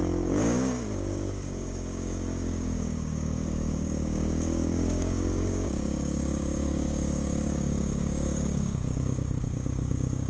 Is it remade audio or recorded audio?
remade